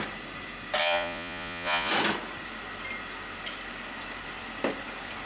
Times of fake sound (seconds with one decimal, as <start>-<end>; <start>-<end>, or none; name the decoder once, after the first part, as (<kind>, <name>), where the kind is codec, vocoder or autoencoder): 0.8-1.9 (vocoder, Vocos)